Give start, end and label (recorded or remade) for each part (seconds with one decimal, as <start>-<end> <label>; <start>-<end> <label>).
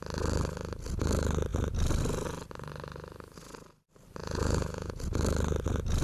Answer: 0.0-4.2 recorded; 4.2-5.0 remade; 5.0-6.0 recorded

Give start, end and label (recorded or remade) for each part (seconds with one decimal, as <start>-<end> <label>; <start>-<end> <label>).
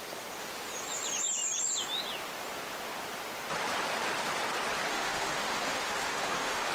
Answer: 0.0-4.9 recorded; 4.9-6.7 remade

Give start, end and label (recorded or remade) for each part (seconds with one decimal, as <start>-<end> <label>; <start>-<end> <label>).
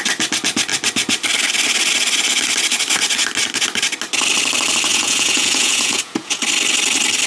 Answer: 0.0-4.9 recorded; 4.9-6.4 remade; 6.4-7.3 recorded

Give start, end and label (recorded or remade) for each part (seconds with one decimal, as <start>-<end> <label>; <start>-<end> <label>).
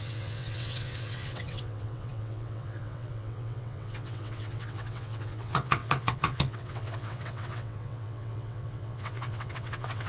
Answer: 0.0-10.1 remade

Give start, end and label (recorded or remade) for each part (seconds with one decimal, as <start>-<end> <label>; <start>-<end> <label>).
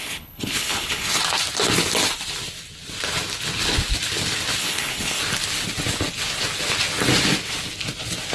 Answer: 0.0-1.2 remade; 1.2-4.6 recorded; 4.6-5.2 remade; 5.2-8.3 recorded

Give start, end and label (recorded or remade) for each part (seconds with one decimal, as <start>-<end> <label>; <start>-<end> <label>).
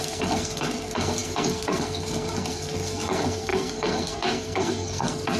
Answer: 0.0-5.4 remade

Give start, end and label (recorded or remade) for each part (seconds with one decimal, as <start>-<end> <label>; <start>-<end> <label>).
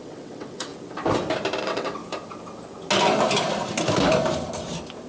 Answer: 0.0-0.7 remade; 0.7-1.6 recorded; 1.6-2.0 remade; 2.0-5.1 recorded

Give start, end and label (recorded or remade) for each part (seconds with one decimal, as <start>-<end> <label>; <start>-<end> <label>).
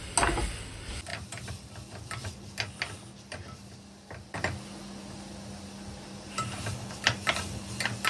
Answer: 0.0-1.1 recorded; 1.1-2.4 remade; 2.4-8.1 recorded